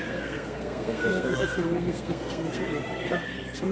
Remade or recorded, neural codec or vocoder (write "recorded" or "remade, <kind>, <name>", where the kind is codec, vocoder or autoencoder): remade, codec, SNAC